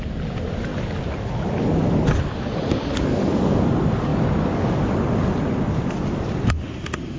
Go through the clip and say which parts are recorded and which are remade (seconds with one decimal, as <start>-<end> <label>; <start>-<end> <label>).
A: 0.0-7.2 recorded